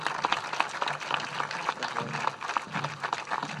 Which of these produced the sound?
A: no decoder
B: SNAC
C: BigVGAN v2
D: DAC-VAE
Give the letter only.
A